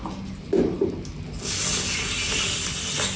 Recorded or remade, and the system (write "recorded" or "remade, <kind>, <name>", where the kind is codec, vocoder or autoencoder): recorded